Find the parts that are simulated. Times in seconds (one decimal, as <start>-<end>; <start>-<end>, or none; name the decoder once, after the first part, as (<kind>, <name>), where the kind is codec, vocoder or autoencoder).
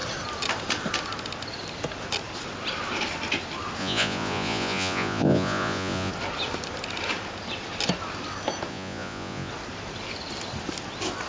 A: 3.8-6.1 (vocoder, Vocos); 8.7-9.5